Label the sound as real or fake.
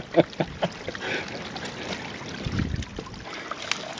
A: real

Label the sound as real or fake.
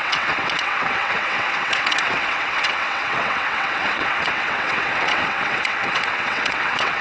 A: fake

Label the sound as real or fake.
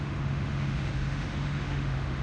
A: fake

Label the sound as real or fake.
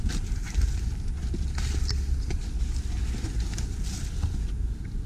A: real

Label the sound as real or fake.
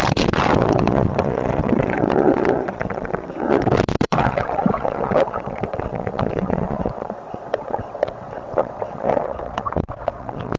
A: fake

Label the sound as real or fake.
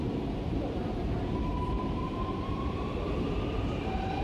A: fake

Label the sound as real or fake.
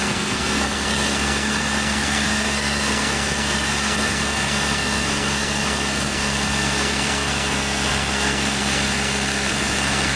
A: fake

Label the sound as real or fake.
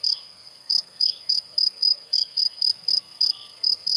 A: fake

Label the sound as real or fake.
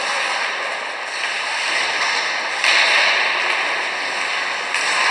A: real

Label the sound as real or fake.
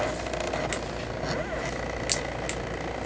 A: real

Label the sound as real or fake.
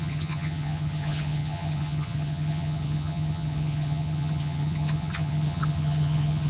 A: fake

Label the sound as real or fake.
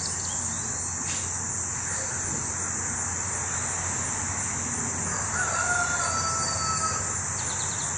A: real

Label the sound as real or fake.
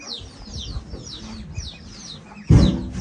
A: real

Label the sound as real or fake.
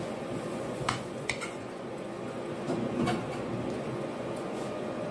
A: fake